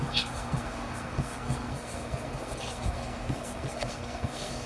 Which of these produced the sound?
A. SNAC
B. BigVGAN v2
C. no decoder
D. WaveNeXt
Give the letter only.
A